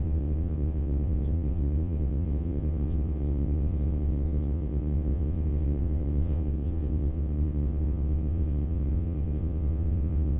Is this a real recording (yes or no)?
no